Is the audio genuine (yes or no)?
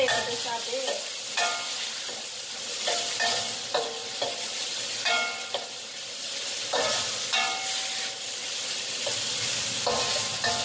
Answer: yes